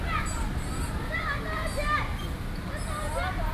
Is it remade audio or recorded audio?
recorded